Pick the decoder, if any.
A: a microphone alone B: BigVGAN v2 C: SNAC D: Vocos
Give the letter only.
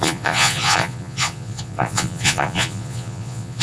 D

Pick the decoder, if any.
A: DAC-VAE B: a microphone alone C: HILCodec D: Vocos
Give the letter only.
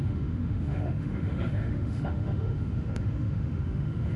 A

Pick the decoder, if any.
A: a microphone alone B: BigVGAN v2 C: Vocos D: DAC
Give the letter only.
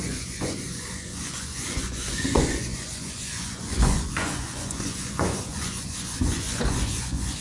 C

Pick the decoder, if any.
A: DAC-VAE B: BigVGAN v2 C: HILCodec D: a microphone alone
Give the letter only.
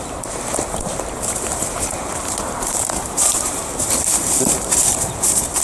B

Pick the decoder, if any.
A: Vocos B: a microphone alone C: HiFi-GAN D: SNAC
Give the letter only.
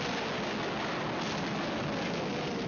B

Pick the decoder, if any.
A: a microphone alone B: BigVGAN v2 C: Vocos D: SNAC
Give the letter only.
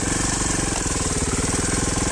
B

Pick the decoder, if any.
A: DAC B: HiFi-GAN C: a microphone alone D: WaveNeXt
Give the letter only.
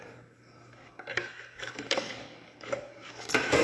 A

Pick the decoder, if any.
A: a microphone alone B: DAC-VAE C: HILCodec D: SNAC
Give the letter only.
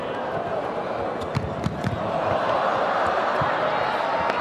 A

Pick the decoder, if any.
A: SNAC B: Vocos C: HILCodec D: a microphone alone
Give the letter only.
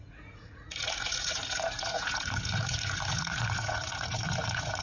B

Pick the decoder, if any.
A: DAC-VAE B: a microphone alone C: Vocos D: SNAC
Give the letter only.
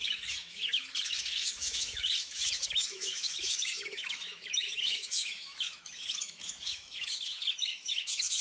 A